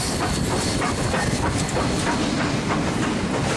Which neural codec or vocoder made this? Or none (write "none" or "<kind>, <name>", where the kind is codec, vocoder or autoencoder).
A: vocoder, BigVGAN v2